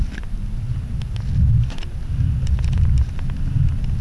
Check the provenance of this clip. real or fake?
real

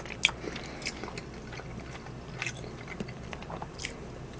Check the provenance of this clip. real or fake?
real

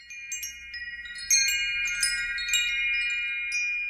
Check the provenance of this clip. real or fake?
real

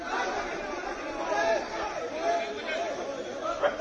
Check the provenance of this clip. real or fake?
real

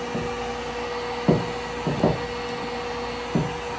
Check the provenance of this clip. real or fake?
real